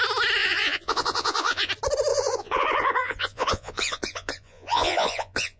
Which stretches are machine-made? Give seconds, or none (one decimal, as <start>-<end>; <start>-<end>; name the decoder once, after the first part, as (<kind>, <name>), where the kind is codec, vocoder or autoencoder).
0.4-1.7 (vocoder, Vocos); 2.1-5.6